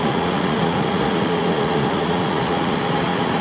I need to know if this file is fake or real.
fake